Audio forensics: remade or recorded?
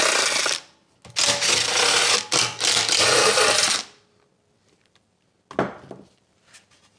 recorded